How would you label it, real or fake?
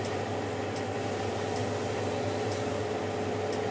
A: real